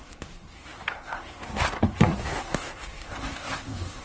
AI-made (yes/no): yes